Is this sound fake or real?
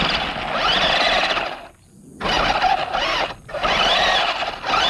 real